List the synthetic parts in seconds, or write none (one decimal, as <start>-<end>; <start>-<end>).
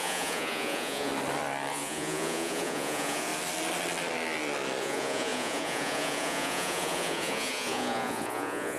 0.0-1.1; 1.7-3.3; 4.8-8.8